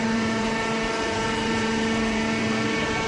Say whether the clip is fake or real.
fake